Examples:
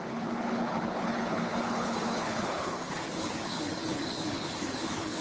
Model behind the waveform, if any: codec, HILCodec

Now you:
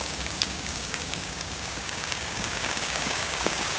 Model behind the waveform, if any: codec, DAC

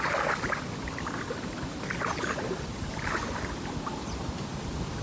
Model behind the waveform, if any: none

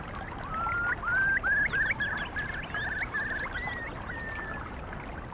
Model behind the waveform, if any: none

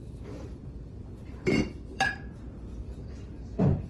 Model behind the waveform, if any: vocoder, BigVGAN v2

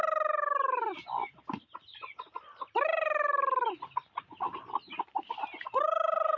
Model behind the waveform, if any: none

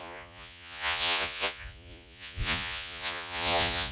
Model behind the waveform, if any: vocoder, Vocos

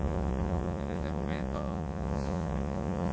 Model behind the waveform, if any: vocoder, Vocos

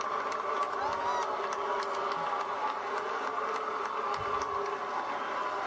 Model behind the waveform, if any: none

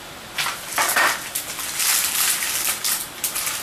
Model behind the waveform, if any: vocoder, BigVGAN v2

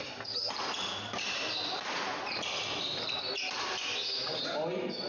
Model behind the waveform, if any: none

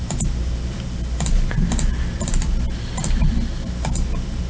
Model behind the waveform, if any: none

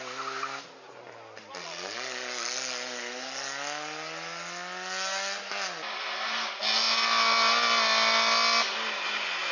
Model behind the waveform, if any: none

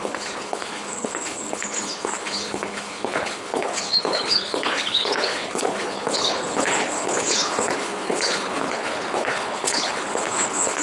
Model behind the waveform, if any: codec, HILCodec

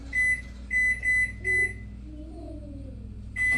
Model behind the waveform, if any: none